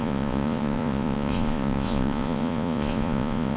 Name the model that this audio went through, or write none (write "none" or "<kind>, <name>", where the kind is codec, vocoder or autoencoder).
vocoder, Vocos